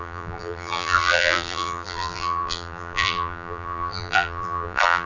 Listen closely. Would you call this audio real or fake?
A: fake